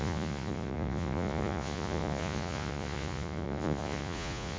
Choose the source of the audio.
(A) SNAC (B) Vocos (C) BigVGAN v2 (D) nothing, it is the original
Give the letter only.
B